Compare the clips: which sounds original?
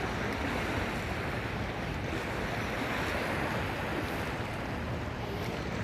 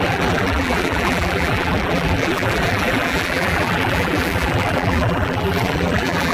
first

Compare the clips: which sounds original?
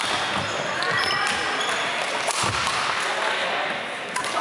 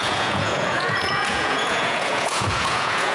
first